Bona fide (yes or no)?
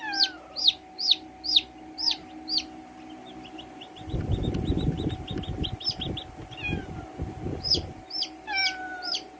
yes